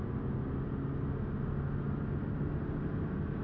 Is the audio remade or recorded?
recorded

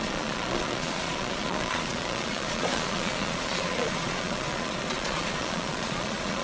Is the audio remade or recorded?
remade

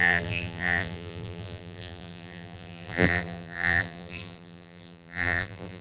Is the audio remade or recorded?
remade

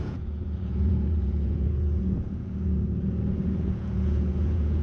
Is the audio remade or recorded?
remade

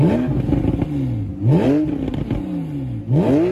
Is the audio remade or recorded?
recorded